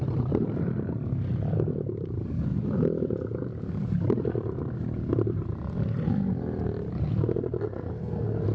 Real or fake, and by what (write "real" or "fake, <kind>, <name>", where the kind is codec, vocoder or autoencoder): real